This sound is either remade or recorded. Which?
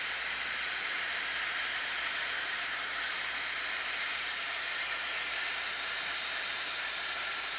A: remade